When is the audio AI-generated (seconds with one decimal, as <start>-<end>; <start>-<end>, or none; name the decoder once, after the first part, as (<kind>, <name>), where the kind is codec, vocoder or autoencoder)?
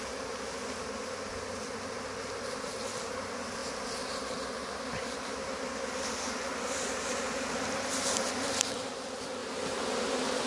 9.4-10.5 (vocoder, BigVGAN v2)